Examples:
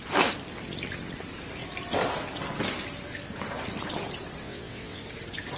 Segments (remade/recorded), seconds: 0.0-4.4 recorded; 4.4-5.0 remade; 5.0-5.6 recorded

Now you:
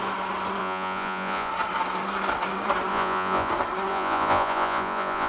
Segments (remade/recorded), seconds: 0.0-0.6 recorded; 0.6-1.5 remade; 1.5-2.9 recorded; 2.9-3.5 remade; 3.5-3.9 recorded; 3.9-5.3 remade

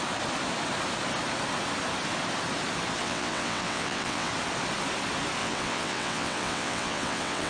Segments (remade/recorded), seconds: 0.0-3.0 recorded; 3.0-4.3 remade; 4.3-5.4 recorded; 5.4-7.5 remade

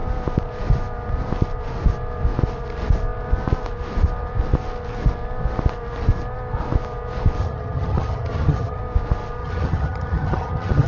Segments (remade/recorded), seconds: 0.0-7.4 recorded; 7.4-8.8 remade; 8.8-9.4 recorded; 9.4-10.9 remade

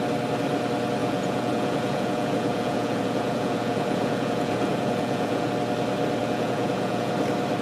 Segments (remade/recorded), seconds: 0.0-1.0 recorded; 1.0-5.5 remade; 5.5-6.2 recorded; 6.2-7.1 remade; 7.1-7.6 recorded

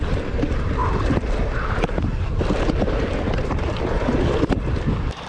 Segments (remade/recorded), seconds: 0.0-5.3 recorded

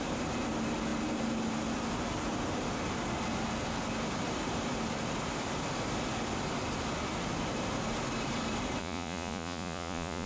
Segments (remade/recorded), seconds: 0.0-8.8 recorded; 8.8-10.3 remade